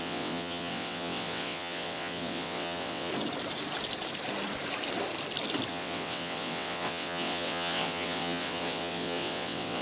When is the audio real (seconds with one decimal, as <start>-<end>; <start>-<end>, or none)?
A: 3.1-5.7